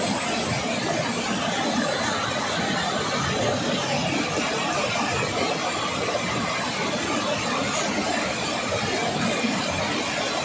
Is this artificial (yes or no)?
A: no